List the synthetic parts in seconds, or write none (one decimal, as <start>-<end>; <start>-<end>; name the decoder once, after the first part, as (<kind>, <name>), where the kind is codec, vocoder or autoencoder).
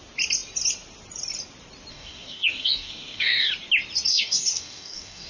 1.9-3.5 (codec, DAC); 4.1-5.3